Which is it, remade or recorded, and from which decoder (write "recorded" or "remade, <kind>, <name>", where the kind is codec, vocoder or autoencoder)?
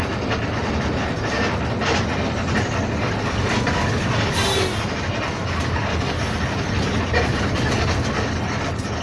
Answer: recorded